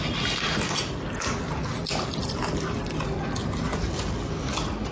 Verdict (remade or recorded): recorded